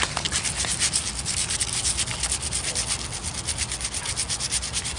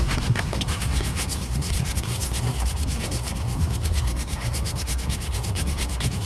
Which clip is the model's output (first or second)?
second